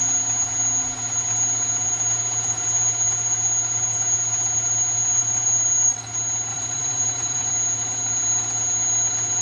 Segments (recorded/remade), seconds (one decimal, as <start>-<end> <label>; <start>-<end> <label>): 0.0-6.5 recorded; 6.5-7.5 remade; 7.5-9.4 recorded